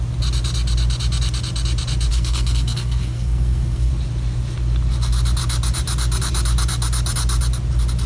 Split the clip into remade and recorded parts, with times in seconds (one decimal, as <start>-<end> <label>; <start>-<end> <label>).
0.0-2.1 recorded; 2.1-3.9 remade; 3.9-8.1 recorded